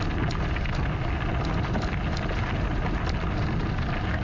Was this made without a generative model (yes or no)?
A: yes